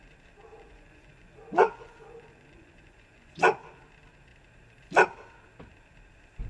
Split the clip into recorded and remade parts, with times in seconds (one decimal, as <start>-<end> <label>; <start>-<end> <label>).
0.0-0.5 recorded; 0.5-3.8 remade; 3.8-6.5 recorded